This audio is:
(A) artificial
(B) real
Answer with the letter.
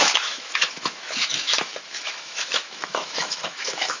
A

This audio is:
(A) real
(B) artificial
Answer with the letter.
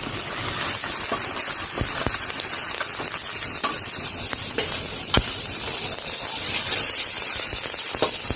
A